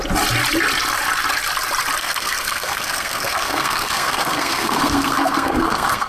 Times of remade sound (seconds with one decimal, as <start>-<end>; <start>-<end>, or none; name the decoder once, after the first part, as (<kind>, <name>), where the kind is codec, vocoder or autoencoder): 2.0-6.1 (codec, SNAC)